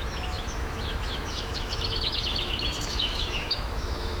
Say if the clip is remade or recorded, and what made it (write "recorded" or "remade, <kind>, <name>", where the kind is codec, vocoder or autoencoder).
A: remade, autoencoder, DAC-VAE